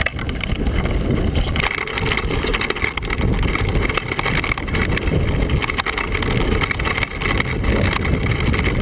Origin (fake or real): real